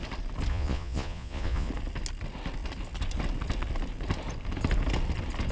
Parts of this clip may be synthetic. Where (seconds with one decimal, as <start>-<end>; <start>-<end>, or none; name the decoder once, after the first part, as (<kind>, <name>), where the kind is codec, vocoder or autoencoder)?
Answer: 0.5-1.7 (vocoder, Vocos)